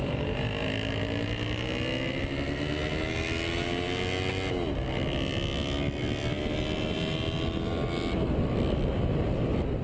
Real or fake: real